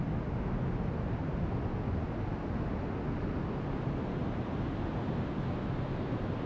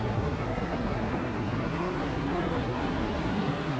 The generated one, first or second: second